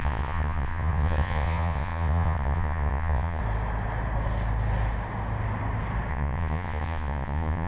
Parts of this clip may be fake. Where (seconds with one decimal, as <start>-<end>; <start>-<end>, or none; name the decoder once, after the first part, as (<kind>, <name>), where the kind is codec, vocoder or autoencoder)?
0.0-3.4 (vocoder, Vocos); 6.1-7.7